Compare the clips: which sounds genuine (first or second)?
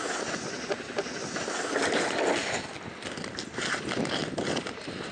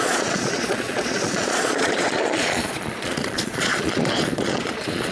first